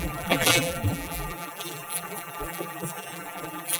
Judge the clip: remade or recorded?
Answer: remade